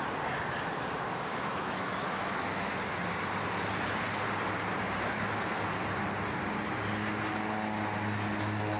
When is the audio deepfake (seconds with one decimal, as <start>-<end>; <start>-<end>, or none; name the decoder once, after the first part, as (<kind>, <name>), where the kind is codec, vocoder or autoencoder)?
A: 1.3-2.7 (autoencoder, DAC-VAE)